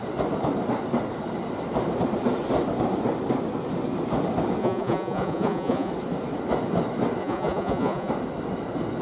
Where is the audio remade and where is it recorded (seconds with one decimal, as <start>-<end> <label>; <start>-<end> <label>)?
0.0-4.6 recorded; 4.6-5.9 remade; 5.9-7.2 recorded; 7.2-8.1 remade; 8.1-9.0 recorded

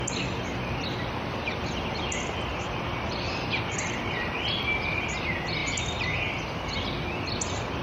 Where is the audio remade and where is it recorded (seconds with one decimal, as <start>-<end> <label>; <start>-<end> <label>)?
0.0-5.6 recorded; 5.6-6.2 remade; 6.2-7.8 recorded

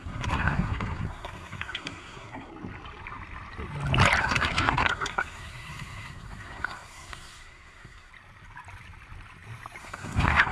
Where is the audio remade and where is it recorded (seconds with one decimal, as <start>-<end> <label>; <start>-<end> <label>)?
0.0-2.5 remade; 2.5-4.2 recorded; 4.2-8.1 remade; 8.1-9.8 recorded; 9.8-10.5 remade

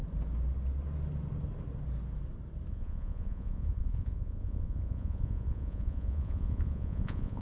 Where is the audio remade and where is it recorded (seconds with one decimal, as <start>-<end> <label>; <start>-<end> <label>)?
0.0-2.7 recorded; 2.7-7.4 remade